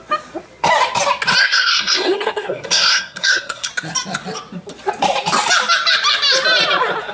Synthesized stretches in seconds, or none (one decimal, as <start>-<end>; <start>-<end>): 1.4-3.7